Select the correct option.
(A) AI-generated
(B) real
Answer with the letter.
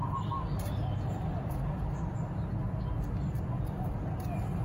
B